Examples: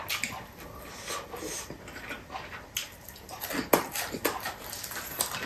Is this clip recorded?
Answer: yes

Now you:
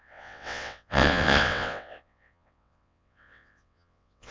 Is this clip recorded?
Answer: no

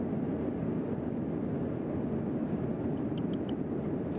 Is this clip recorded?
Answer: yes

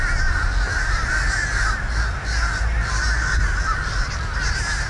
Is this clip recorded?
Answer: yes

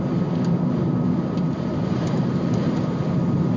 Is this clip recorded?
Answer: yes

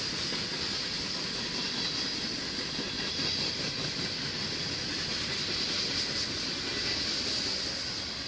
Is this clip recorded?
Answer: yes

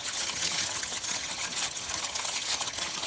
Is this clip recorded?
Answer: no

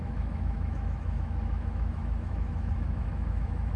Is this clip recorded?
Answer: no